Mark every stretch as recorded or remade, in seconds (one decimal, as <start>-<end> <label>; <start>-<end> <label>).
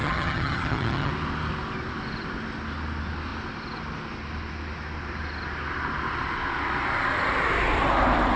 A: 0.0-1.1 remade; 1.1-8.4 recorded